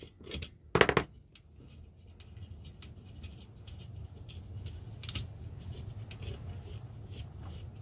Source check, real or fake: real